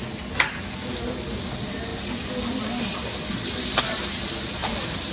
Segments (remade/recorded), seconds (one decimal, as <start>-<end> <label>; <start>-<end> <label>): 0.0-4.6 recorded; 4.6-5.1 remade